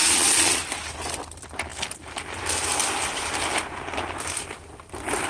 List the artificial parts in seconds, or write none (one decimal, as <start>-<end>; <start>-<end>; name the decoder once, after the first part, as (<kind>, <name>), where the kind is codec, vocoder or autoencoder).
0.0-0.6 (vocoder, Vocos)